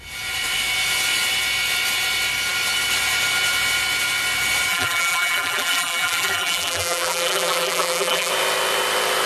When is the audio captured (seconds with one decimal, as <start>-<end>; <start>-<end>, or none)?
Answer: 0.0-4.7; 8.3-9.3